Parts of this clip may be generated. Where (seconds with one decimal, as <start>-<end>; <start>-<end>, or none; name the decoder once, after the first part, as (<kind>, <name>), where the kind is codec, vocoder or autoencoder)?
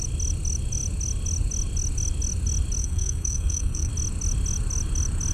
2.8-3.9 (codec, SNAC)